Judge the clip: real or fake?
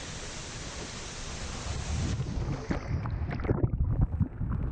real